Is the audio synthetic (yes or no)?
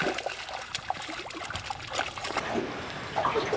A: no